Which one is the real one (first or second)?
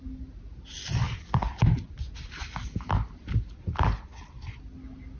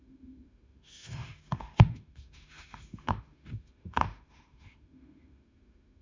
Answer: first